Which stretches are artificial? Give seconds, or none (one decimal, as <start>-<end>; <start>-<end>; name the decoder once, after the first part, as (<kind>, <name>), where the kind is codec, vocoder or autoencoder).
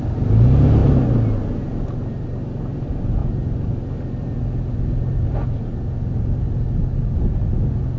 none